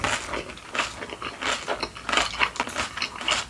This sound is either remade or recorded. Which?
recorded